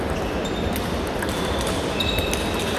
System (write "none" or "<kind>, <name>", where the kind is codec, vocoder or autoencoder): none